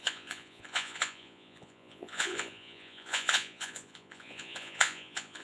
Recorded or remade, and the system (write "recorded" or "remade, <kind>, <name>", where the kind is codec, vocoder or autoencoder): remade, vocoder, Vocos